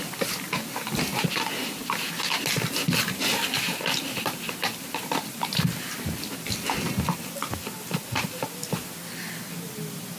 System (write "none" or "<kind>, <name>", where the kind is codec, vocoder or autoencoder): none